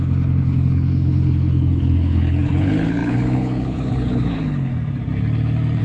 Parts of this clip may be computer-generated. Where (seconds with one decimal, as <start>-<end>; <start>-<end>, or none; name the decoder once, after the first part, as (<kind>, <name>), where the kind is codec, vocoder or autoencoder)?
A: 0.0-4.7 (codec, HILCodec)